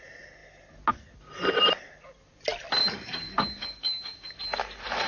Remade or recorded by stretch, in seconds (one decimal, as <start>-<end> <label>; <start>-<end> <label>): 0.0-2.8 recorded; 2.8-4.4 remade; 4.4-5.1 recorded